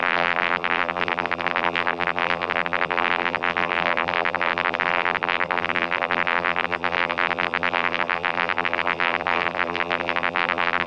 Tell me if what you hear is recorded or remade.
remade